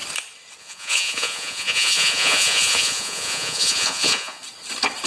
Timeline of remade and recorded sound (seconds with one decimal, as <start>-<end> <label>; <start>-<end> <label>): 0.0-0.6 recorded; 0.6-4.4 remade; 4.4-5.1 recorded